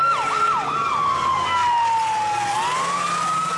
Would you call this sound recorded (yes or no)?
yes